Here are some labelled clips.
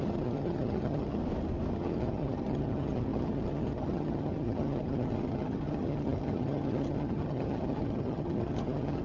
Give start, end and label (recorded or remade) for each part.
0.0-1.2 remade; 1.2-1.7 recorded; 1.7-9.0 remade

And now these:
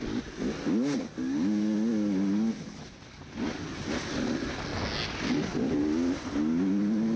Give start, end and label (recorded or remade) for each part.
0.0-7.2 recorded

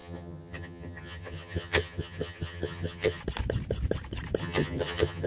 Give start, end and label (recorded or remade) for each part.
0.0-3.2 remade; 3.2-4.4 recorded; 4.4-5.3 remade